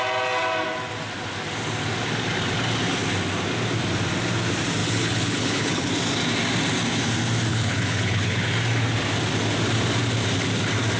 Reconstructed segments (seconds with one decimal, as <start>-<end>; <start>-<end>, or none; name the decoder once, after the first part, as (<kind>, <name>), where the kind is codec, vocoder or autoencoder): 4.8-5.9 (codec, HILCodec); 7.5-8.4